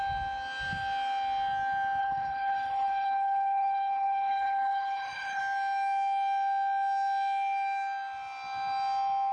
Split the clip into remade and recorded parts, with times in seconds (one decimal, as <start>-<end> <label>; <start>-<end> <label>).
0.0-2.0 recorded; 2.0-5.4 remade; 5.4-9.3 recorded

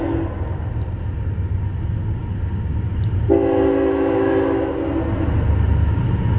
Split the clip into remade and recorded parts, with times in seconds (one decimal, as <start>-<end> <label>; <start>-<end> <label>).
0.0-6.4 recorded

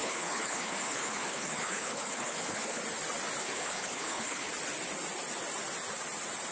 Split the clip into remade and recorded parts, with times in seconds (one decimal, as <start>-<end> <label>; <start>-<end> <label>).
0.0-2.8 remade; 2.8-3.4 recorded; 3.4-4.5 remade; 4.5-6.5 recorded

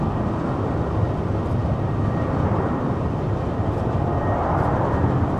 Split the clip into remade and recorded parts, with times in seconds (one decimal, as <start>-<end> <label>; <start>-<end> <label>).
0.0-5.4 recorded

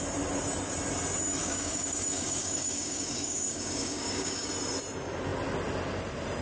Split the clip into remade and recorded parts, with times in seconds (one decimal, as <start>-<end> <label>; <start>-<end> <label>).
0.0-1.4 recorded; 1.4-4.5 remade; 4.5-6.4 recorded

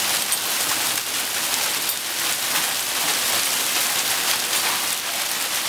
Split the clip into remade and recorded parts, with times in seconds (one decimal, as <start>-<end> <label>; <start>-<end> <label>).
0.0-5.7 recorded

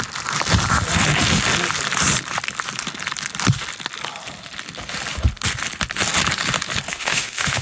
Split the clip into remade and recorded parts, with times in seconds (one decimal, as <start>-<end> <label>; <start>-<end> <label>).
0.0-6.9 recorded; 6.9-7.6 remade